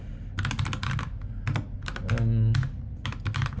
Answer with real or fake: real